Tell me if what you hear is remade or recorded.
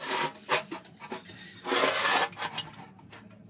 recorded